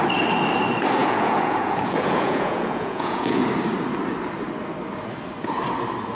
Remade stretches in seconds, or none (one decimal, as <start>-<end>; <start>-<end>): 1.0-3.5